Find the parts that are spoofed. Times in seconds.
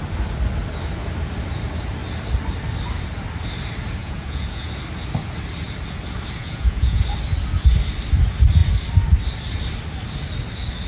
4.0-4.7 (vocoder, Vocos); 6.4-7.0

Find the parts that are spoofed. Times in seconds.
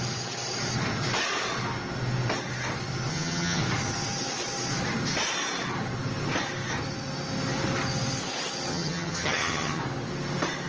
3.1-3.6 (vocoder, HiFi-GAN); 8.7-9.8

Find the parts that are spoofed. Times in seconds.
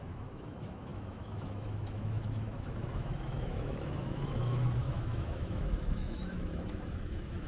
0.0-7.5 (autoencoder, DAC-VAE)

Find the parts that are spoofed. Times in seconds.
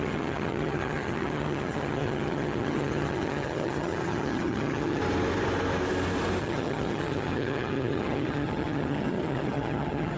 0.0-5.0 (vocoder, HiFi-GAN); 6.4-10.2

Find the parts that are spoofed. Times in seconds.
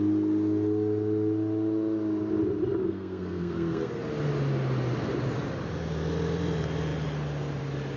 2.8-4.0 (codec, SNAC)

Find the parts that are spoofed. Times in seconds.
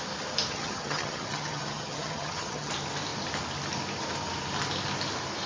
0.5-2.7 (vocoder, HiFi-GAN)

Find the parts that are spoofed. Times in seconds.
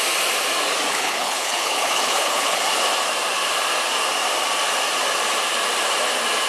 0.9-2.6 (codec, HILCodec)